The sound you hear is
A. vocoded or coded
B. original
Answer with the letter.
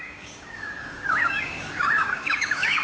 A